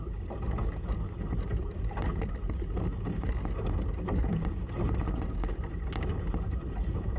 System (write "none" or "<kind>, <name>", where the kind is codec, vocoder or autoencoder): none